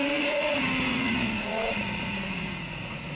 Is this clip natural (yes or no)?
no